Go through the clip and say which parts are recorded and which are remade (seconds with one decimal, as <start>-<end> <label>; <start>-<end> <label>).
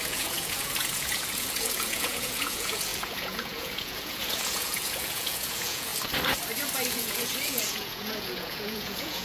0.0-5.9 remade; 5.9-6.9 recorded; 6.9-9.2 remade